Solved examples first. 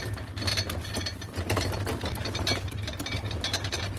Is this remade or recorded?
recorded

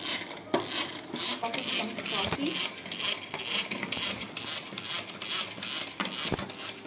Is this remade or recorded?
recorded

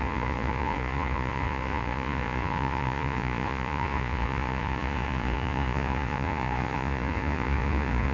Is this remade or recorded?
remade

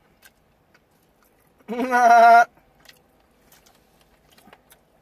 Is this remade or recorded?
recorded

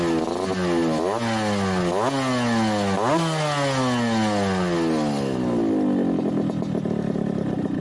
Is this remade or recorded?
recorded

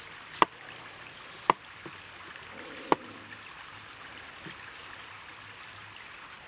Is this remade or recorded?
recorded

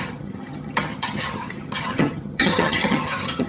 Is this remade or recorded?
remade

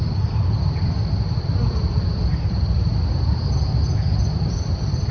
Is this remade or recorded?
remade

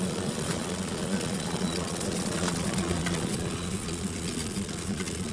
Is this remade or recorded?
remade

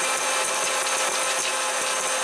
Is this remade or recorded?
recorded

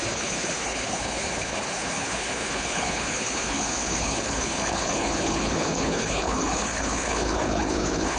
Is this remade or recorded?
remade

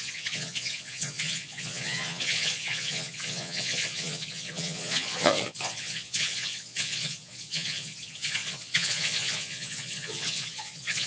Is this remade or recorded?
remade